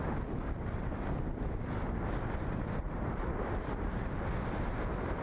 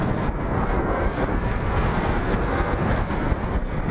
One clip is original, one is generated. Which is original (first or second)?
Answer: first